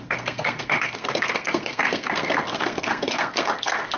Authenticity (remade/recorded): remade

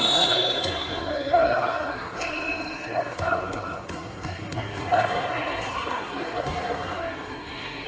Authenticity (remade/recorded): remade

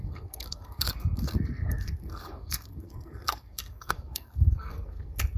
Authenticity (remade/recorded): remade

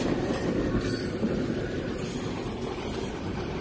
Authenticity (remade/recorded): recorded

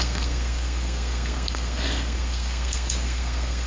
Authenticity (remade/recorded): remade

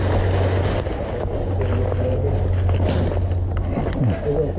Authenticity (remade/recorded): recorded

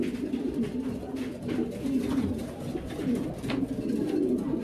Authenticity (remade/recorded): recorded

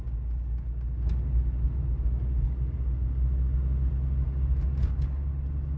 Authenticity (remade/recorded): recorded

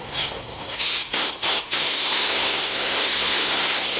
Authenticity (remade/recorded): remade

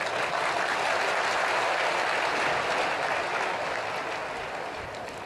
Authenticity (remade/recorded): recorded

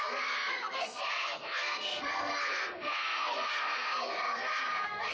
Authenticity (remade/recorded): remade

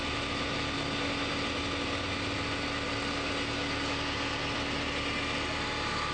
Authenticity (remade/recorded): recorded